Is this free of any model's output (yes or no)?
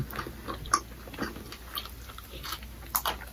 yes